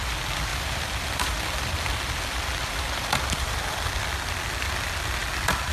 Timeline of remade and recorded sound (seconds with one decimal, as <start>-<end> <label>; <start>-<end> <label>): 0.0-0.5 recorded; 0.5-3.9 remade; 3.9-5.7 recorded